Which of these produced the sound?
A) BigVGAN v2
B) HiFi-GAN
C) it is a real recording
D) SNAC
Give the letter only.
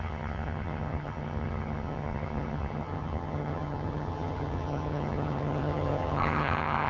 B